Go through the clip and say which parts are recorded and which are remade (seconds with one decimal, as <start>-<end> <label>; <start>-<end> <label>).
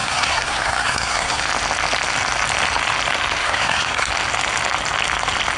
0.0-1.4 remade; 1.4-3.4 recorded; 3.4-4.1 remade; 4.1-5.6 recorded